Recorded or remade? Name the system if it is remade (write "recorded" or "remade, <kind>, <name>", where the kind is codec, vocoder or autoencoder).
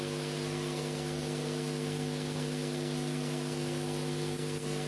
remade, codec, SNAC